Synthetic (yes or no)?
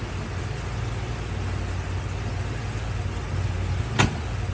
no